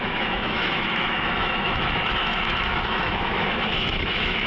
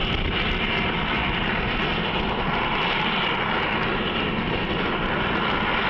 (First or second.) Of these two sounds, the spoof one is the first